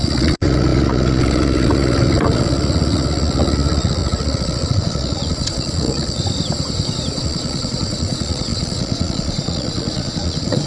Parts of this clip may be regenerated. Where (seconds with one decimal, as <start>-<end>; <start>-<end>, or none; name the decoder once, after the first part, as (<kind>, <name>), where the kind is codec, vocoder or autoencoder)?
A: 0.0-6.2 (vocoder, Vocos); 7.2-10.7